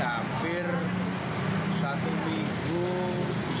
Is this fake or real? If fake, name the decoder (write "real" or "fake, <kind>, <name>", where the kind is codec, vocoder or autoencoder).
real